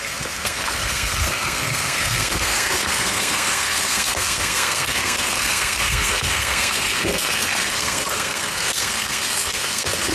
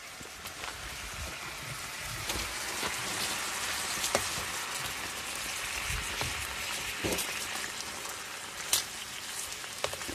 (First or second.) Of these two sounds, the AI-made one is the first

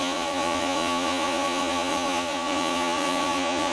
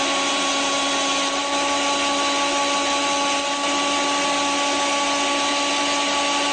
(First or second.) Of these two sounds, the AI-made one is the first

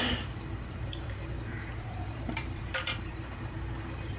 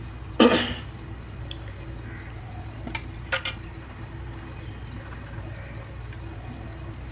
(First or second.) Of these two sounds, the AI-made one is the first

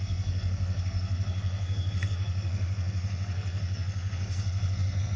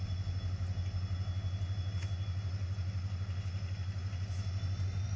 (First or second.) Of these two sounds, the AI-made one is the first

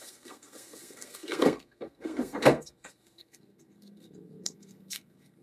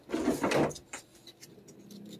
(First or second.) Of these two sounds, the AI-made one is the first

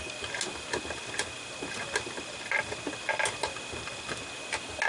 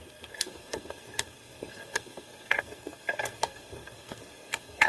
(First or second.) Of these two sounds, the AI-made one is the second